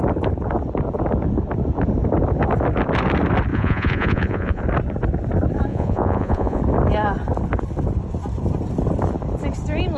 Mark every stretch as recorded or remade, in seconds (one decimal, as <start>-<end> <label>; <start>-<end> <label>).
0.0-3.5 recorded; 3.5-4.6 remade; 4.6-5.7 recorded; 5.7-6.6 remade; 6.6-10.0 recorded